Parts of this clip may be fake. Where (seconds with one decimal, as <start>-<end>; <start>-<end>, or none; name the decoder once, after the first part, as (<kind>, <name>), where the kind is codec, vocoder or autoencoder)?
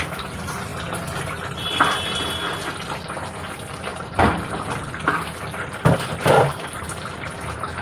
3.9-4.8 (vocoder, BigVGAN v2)